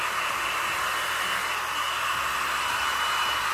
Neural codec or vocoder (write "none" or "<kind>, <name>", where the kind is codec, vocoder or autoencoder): none